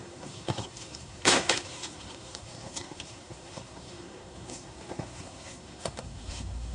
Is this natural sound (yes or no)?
no